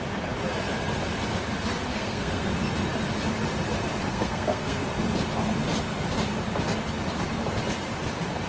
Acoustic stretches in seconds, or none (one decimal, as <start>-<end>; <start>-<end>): 0.0-1.9; 2.5-4.1; 4.9-8.5